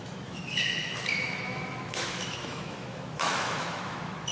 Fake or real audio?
fake